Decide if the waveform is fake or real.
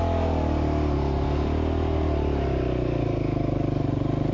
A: real